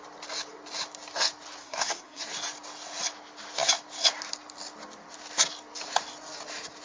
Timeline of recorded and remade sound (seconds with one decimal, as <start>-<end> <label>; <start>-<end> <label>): 0.0-1.6 recorded; 1.6-2.2 remade; 2.2-6.8 recorded